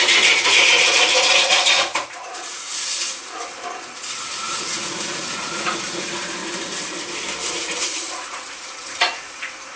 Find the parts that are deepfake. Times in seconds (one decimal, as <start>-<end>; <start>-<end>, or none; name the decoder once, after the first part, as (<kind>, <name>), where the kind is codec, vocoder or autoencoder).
0.0-2.7 (vocoder, Vocos); 4.0-6.4; 7.5-9.8